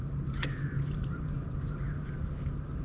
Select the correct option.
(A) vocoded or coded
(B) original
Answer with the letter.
A